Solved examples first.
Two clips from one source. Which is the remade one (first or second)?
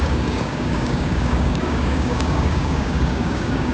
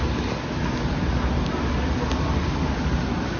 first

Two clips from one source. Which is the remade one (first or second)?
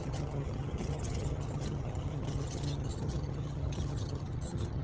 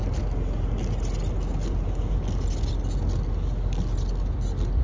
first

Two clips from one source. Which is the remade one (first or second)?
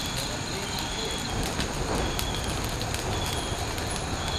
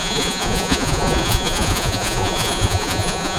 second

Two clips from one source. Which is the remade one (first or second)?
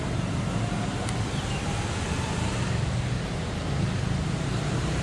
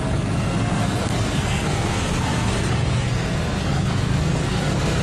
second